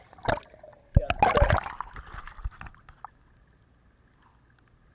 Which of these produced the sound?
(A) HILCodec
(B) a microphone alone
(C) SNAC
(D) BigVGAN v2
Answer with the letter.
B